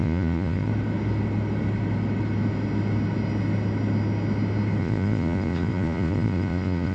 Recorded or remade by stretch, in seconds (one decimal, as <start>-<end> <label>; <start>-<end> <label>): 0.0-0.7 remade; 0.7-4.8 recorded; 4.8-6.9 remade